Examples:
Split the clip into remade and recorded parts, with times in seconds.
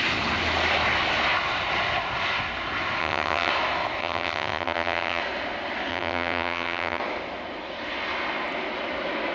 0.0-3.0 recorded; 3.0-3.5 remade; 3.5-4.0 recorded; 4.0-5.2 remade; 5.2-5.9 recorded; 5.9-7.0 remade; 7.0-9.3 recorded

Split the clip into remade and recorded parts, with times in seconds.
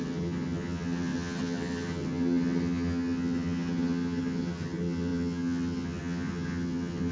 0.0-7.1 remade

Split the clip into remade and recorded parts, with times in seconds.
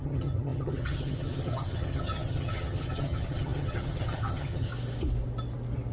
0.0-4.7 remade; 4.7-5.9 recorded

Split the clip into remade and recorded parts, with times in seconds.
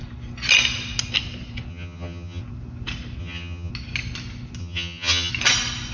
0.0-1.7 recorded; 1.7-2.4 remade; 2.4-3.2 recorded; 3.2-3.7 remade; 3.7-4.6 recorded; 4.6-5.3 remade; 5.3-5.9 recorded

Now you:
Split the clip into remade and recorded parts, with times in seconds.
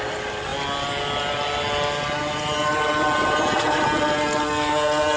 0.0-5.2 recorded